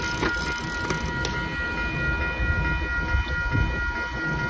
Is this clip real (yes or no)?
yes